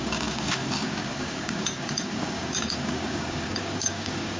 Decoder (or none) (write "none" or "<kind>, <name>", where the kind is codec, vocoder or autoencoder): codec, DAC